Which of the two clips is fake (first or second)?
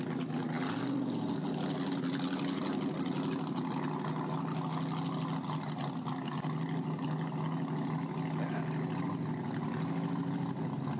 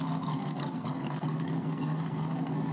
second